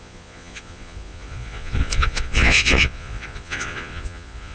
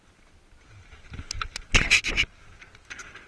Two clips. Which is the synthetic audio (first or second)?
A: first